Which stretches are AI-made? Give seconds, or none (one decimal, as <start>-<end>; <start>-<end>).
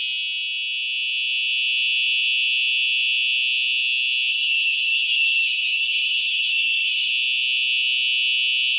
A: 4.3-7.1